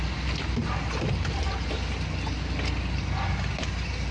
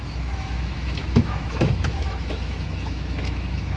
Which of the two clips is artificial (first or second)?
second